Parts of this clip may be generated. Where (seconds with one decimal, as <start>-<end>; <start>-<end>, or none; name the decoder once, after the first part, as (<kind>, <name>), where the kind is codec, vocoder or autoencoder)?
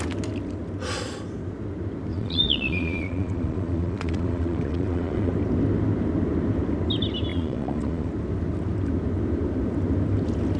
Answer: 2.1-5.3 (vocoder, Vocos); 7.3-8.1